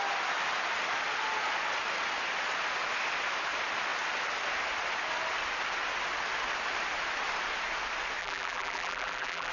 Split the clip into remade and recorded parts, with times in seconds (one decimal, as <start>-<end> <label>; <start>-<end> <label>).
0.0-8.2 recorded; 8.2-9.5 remade